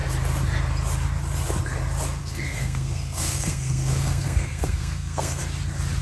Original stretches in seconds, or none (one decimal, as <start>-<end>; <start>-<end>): 0.0-2.2; 5.4-6.0